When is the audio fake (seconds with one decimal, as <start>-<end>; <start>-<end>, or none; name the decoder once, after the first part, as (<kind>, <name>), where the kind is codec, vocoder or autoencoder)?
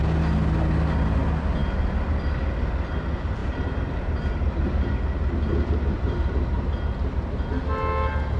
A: 3.4-4.9 (vocoder, BigVGAN v2); 5.5-6.6